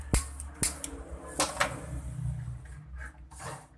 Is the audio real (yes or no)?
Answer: yes